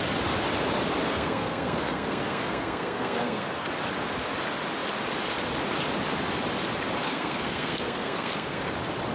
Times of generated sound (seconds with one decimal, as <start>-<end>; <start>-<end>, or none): 1.1-3.7; 7.0-8.7